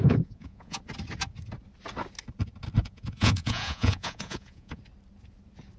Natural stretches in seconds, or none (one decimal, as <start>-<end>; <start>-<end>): 0.8-2.8; 4.8-5.8